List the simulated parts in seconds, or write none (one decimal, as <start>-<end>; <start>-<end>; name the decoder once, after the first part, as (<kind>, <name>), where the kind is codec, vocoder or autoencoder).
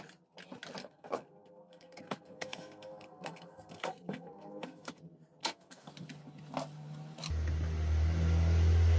0.8-5.0 (codec, SNAC); 5.4-5.9